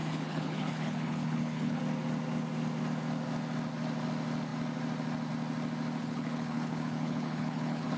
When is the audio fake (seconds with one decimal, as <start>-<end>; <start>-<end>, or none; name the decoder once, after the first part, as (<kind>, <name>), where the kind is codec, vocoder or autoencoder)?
0.0-1.8 (codec, HILCodec); 6.0-8.0